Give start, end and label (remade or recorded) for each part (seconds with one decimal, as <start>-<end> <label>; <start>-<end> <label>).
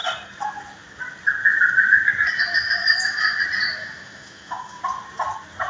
0.0-2.8 recorded; 2.8-3.4 remade; 3.4-3.8 recorded; 3.8-4.8 remade; 4.8-5.7 recorded